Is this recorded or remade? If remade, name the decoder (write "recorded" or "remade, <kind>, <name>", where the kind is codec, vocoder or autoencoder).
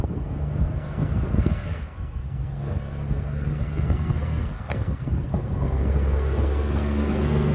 remade, codec, SNAC